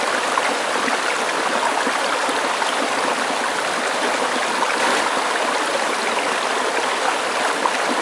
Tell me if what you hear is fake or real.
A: real